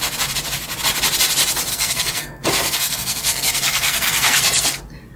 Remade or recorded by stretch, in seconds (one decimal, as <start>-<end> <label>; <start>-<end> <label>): 0.0-1.7 recorded; 1.7-4.8 remade; 4.8-5.2 recorded